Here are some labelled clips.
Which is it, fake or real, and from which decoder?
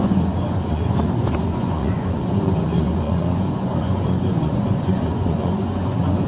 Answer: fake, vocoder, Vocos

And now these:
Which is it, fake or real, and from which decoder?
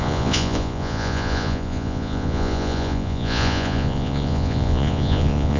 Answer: fake, vocoder, Vocos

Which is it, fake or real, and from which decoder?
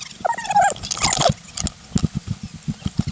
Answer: real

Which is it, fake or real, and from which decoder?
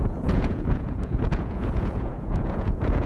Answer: fake, vocoder, Vocos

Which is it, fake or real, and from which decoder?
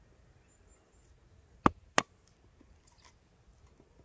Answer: real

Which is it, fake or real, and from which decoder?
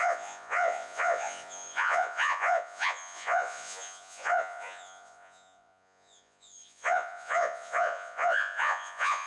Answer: fake, vocoder, Vocos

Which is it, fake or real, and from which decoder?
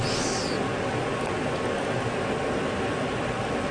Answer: real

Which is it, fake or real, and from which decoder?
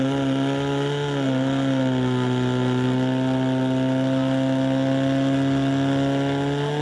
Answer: real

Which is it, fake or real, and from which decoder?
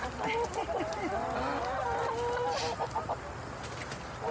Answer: real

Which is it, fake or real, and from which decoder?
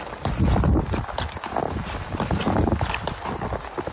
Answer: real